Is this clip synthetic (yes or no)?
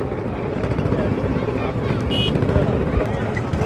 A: no